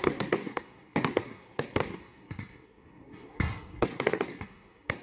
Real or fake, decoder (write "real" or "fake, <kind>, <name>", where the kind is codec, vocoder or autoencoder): fake, codec, SNAC